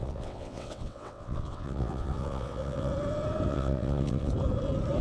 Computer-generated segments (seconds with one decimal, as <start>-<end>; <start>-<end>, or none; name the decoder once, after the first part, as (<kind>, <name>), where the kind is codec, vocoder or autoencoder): 0.0-2.9 (vocoder, WaveNeXt); 3.5-4.3